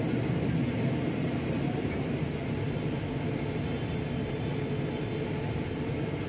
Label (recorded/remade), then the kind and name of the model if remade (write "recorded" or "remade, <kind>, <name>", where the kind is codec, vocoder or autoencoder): recorded